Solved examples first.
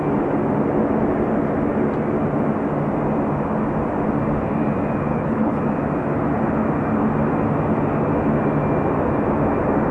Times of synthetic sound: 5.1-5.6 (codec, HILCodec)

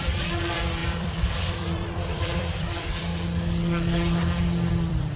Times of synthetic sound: 0.0-3.1 (vocoder, BigVGAN v2); 4.7-5.2

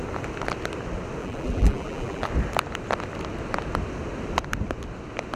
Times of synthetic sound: 1.2-2.3 (vocoder, BigVGAN v2)

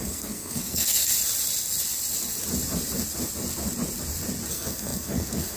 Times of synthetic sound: 0.0-1.1 (codec, SNAC); 4.5-5.6

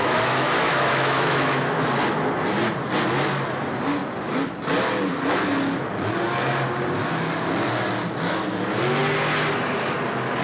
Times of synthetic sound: 0.0-1.8 (autoencoder, DAC-VAE)

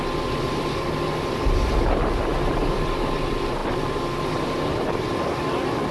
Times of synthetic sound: none

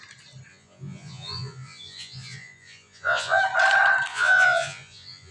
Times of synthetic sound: 0.5-3.4 (vocoder, Vocos); 4.1-5.3